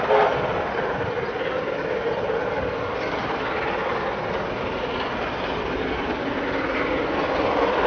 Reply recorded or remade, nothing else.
recorded